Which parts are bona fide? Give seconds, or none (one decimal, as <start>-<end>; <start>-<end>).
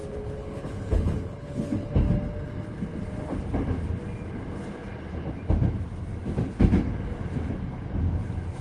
1.9-8.6